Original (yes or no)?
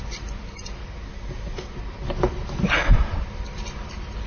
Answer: yes